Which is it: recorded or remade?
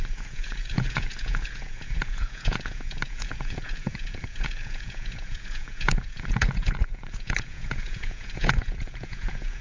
remade